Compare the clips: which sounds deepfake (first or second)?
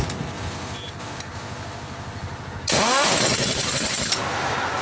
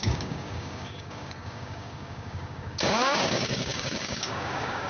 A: second